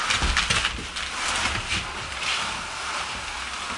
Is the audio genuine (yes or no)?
yes